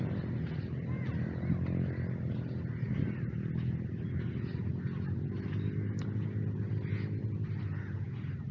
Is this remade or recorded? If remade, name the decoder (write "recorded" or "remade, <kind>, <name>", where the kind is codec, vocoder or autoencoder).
recorded